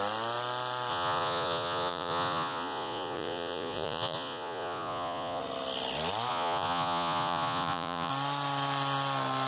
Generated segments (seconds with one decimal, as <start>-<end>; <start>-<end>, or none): 0.9-5.4; 6.3-8.1